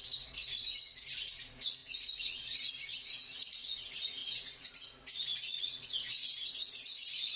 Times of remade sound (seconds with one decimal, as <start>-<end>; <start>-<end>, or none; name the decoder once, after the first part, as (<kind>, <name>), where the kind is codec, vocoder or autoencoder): 0.0-7.4 (vocoder, Vocos)